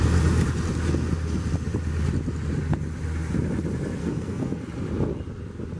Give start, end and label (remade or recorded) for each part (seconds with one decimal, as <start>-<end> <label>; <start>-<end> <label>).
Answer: 0.0-4.0 recorded; 4.0-4.6 remade; 4.6-5.8 recorded